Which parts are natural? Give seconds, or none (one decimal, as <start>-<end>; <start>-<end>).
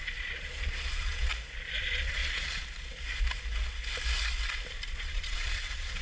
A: 1.3-1.8; 2.2-4.9